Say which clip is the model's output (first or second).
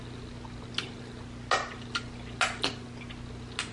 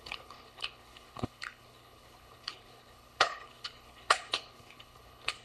second